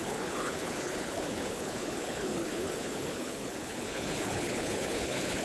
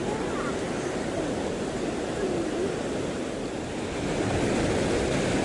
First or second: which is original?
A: second